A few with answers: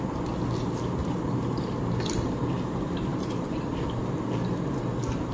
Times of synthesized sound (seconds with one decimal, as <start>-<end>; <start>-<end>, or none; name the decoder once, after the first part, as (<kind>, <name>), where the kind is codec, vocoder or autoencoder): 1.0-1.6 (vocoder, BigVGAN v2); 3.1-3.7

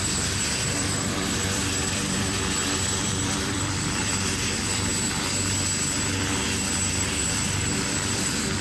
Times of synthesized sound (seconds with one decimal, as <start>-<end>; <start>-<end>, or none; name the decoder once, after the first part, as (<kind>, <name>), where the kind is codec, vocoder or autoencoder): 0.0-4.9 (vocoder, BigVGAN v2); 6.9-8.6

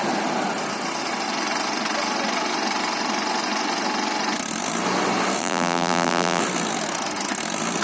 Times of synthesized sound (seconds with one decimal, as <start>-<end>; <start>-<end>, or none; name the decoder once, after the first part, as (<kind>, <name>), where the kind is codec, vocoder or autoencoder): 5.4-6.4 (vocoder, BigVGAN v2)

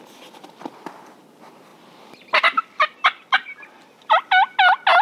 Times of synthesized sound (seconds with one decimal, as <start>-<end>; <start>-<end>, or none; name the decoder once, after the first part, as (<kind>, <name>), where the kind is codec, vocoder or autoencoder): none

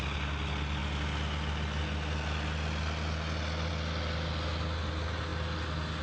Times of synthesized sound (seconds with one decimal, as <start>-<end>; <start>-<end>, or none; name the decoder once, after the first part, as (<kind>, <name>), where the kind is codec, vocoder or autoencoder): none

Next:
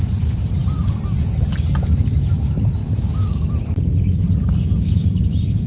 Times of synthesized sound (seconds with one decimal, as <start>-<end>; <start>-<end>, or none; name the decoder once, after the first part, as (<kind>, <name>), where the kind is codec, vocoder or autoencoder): none